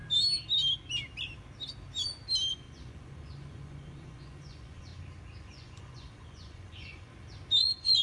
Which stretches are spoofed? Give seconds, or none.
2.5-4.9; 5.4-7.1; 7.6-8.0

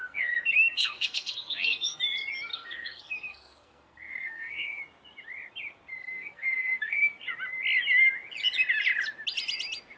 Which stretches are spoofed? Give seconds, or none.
0.0-2.0; 2.5-4.8; 6.0-7.2